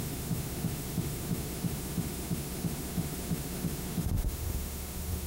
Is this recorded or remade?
remade